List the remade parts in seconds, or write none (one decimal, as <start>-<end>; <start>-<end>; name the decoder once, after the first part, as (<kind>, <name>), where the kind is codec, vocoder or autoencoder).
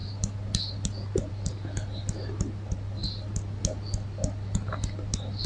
none